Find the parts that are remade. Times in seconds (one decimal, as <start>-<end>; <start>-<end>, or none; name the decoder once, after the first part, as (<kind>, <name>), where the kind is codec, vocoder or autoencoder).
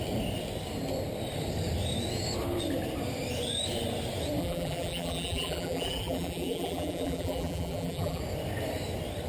4.4-8.2 (vocoder, BigVGAN v2)